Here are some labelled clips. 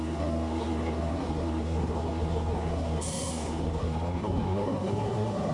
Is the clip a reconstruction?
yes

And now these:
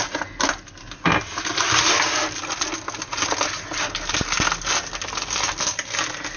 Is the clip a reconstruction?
no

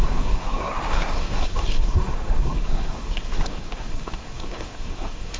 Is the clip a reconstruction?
yes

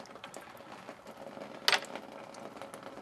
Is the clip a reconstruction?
no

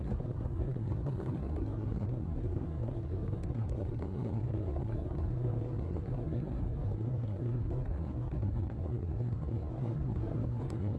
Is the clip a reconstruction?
yes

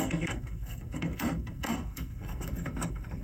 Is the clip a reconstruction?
yes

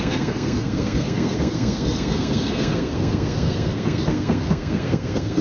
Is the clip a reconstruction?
yes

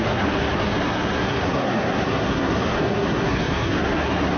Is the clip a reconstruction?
yes